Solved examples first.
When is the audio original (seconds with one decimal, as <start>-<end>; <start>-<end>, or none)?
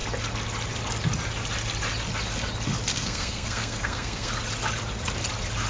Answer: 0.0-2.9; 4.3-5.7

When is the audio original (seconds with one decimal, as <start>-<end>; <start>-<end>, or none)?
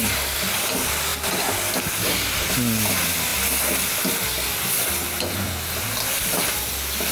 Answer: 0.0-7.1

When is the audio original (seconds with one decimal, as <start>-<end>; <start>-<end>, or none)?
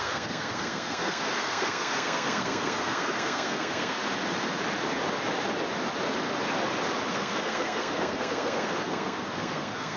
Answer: 4.0-7.1